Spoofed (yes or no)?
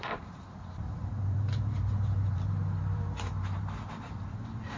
yes